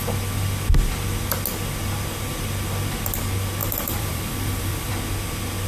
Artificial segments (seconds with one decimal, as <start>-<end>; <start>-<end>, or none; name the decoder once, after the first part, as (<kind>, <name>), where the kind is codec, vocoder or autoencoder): 3.6-4.9 (vocoder, BigVGAN v2)